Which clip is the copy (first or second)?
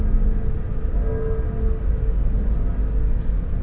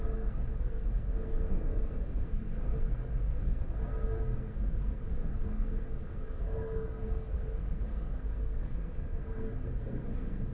second